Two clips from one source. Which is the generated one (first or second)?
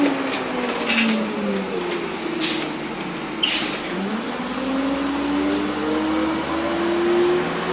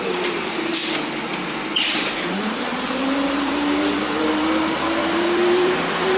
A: second